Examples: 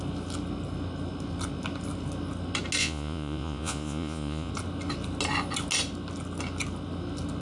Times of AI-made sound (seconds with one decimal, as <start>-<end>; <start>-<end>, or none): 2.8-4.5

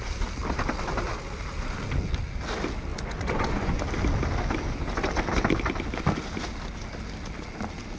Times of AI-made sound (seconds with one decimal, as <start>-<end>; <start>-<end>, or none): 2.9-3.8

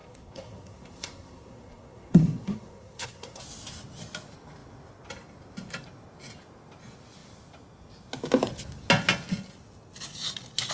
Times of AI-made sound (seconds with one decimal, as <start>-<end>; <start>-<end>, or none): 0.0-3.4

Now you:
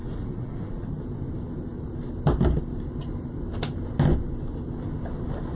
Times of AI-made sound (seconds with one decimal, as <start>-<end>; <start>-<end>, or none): 0.0-1.0

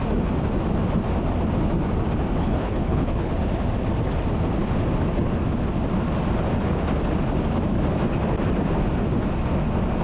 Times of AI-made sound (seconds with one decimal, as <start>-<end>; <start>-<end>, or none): 2.4-3.3

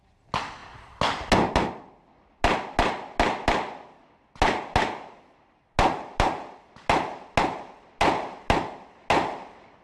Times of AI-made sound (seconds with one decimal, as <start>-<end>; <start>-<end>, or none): none

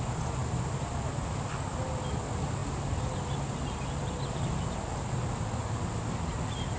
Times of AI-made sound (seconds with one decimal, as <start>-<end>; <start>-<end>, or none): none

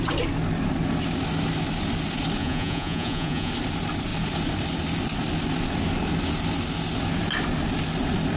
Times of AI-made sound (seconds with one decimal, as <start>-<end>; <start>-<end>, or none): 2.4-3.5